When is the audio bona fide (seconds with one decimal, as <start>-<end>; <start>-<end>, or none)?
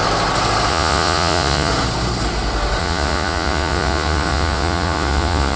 0.0-0.7; 1.7-2.8